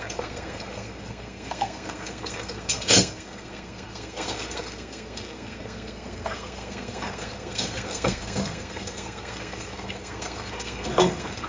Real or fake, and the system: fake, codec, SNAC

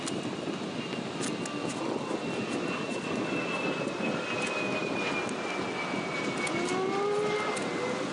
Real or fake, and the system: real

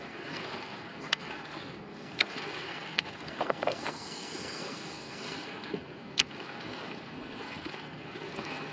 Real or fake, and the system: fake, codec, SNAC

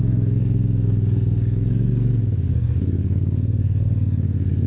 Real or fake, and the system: fake, codec, SNAC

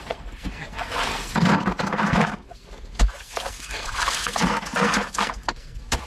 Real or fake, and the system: fake, codec, SNAC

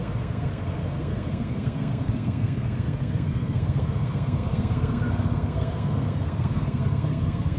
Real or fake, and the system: fake, codec, SNAC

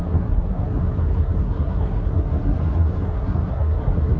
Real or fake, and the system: fake, codec, SNAC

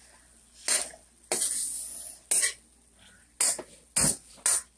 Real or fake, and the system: real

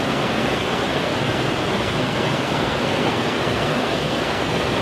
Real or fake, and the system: fake, codec, SNAC